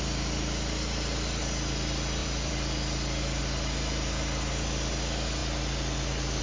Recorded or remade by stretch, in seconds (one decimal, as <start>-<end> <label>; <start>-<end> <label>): 0.0-2.2 recorded; 2.2-3.4 remade; 3.4-6.4 recorded